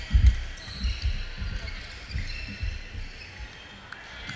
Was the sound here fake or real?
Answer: real